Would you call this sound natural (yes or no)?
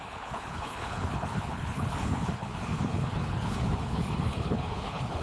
no